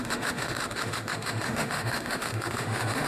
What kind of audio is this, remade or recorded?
remade